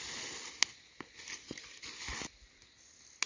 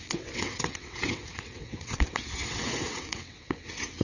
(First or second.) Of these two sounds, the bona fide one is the first